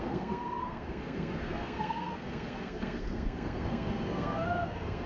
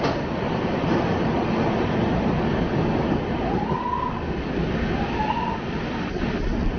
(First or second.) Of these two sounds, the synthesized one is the first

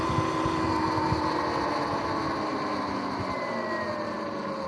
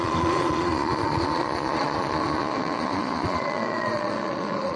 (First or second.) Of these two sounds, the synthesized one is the second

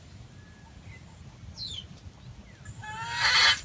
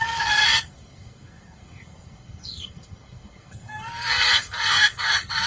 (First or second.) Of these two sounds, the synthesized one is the second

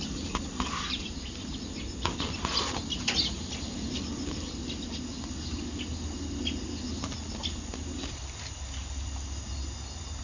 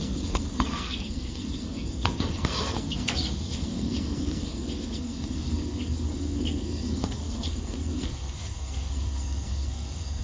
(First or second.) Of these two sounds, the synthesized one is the second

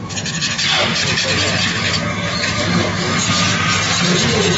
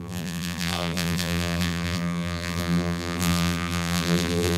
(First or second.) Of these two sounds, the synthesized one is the second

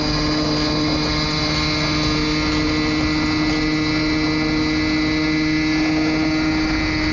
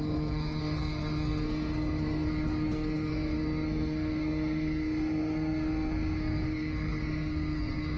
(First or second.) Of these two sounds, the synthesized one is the second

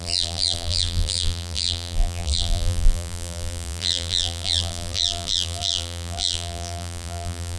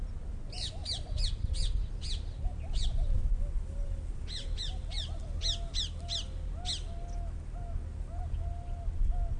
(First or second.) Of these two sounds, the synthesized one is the first